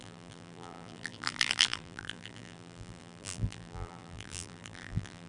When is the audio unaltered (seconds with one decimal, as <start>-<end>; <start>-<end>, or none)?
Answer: none